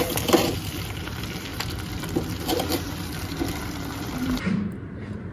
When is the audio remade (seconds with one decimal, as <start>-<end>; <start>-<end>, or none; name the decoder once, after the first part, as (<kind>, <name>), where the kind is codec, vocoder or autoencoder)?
0.0-5.3 (vocoder, BigVGAN v2)